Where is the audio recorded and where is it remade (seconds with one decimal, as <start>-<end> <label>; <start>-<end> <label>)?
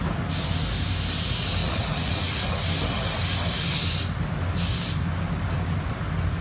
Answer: 0.0-1.6 recorded; 1.6-2.2 remade; 2.2-6.4 recorded